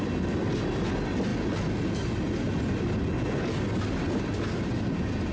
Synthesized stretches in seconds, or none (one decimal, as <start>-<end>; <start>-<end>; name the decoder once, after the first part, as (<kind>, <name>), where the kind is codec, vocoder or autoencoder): none

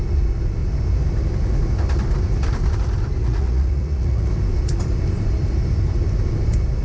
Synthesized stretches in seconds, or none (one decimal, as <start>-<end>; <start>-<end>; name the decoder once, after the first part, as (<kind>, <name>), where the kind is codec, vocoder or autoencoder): 3.2-4.3 (vocoder, Vocos)

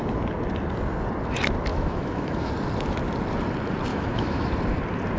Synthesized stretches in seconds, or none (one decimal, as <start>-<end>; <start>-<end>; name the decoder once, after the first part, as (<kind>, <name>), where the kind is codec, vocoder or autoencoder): 1.7-2.5 (autoencoder, DAC-VAE); 3.9-4.5

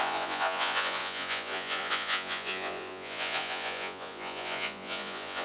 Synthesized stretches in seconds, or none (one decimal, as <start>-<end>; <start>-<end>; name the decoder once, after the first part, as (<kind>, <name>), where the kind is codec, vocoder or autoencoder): 0.0-5.4 (vocoder, Vocos)

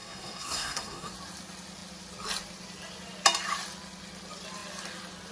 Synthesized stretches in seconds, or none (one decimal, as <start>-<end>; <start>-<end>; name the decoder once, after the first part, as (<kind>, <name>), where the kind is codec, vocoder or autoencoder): 0.0-1.1 (codec, SNAC)